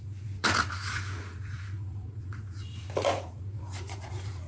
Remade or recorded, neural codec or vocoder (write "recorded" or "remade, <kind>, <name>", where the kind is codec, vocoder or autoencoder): remade, vocoder, Vocos